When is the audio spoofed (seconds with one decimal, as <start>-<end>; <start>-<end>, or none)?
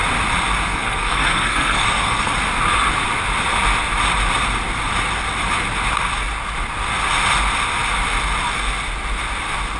0.7-2.3